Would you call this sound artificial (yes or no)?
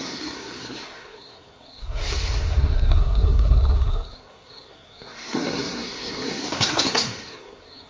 yes